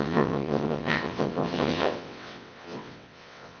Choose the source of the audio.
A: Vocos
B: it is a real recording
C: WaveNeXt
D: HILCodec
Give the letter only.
C